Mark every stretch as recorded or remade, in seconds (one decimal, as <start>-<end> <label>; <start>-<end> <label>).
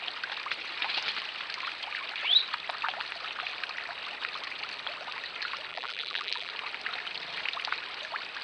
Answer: 0.0-5.7 recorded; 5.7-6.5 remade; 6.5-8.4 recorded